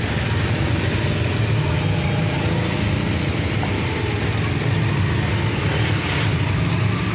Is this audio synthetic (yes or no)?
no